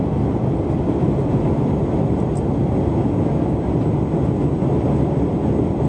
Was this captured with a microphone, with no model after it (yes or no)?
yes